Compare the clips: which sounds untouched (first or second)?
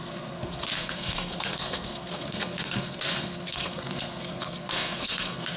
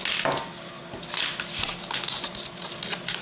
second